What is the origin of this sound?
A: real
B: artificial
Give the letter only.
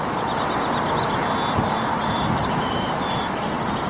A